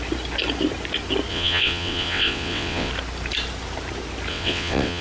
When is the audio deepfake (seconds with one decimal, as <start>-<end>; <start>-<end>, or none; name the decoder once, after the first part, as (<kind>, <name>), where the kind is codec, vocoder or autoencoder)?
1.3-2.9 (vocoder, WaveNeXt); 4.3-5.0